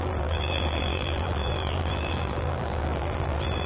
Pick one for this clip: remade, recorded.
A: remade